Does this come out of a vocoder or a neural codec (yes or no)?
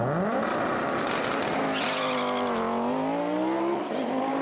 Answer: no